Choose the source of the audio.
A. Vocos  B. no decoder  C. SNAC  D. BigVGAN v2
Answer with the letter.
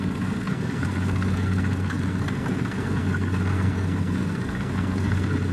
C